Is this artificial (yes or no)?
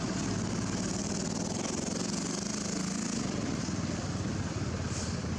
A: no